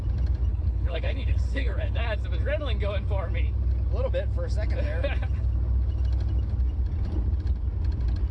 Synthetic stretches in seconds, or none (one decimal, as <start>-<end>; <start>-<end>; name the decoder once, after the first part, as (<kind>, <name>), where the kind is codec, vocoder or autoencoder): 0.5-2.0 (codec, HILCodec)